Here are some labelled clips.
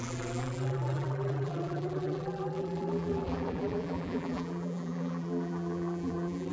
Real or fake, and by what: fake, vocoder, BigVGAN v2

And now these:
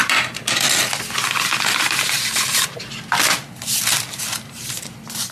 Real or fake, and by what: real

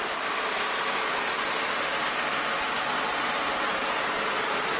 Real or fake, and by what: real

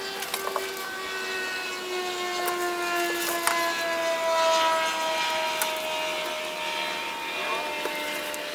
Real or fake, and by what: real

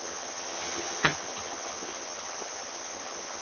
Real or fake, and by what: fake, vocoder, HiFi-GAN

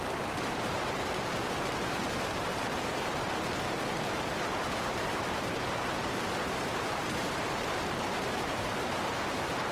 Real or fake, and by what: fake, vocoder, BigVGAN v2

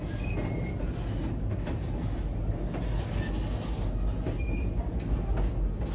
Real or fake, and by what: real